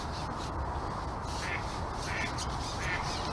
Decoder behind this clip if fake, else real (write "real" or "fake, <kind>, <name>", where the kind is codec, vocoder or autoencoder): real